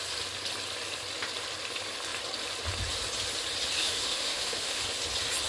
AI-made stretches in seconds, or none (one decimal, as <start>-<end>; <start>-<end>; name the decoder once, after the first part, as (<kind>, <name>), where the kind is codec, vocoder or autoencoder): 3.8-4.8 (autoencoder, DAC-VAE)

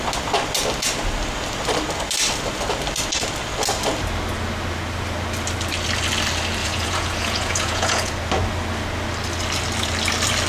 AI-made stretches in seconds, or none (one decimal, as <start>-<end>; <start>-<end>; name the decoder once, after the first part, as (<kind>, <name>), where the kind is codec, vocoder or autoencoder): 6.6-8.1 (vocoder, Vocos)